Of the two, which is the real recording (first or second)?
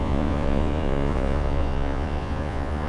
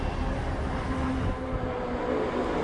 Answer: second